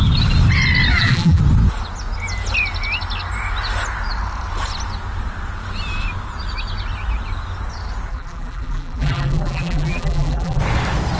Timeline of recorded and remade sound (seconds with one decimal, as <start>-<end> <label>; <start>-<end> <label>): 0.0-0.9 recorded; 0.9-1.4 remade; 1.4-8.1 recorded; 8.1-10.6 remade; 10.6-11.2 recorded